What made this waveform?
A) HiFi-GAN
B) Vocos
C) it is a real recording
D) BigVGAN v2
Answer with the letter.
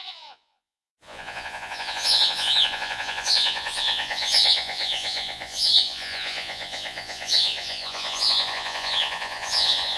B